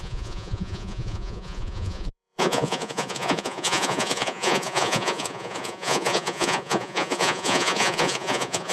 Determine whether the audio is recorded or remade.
remade